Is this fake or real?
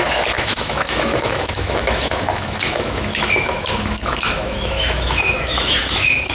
fake